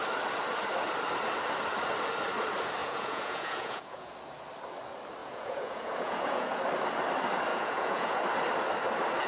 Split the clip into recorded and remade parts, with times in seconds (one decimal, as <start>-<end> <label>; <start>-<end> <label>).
0.0-2.8 recorded; 2.8-4.1 remade; 4.1-5.2 recorded; 5.2-6.6 remade; 6.6-7.5 recorded; 7.5-8.2 remade; 8.2-9.3 recorded